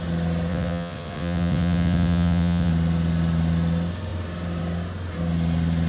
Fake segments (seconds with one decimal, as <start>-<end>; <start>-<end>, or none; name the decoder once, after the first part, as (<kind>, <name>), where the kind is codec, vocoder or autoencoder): 0.5-2.7 (vocoder, WaveNeXt)